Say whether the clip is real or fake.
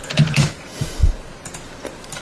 real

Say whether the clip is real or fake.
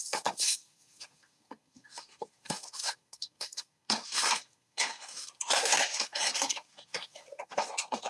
fake